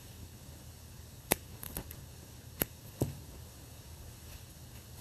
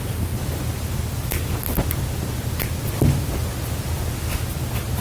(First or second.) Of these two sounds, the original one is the second